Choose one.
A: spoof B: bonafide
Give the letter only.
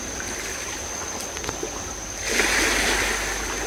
B